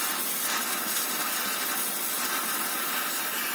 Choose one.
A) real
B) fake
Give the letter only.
A